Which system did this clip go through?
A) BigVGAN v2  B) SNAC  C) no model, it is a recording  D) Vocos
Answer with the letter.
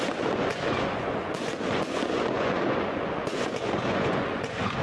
D